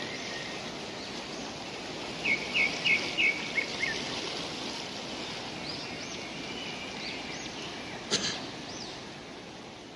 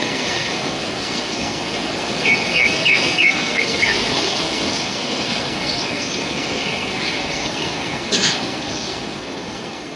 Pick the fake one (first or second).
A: second